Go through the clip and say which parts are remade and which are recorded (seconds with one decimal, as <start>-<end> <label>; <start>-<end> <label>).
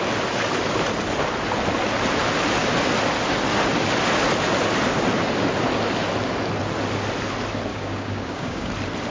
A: 0.0-7.7 recorded; 7.7-8.7 remade; 8.7-9.1 recorded